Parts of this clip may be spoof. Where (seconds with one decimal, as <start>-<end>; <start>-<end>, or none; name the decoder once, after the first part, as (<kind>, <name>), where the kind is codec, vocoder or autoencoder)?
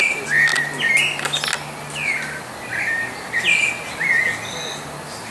none